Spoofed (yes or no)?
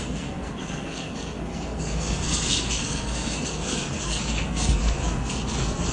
yes